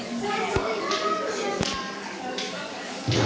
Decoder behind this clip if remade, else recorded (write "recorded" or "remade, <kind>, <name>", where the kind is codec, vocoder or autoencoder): remade, codec, DAC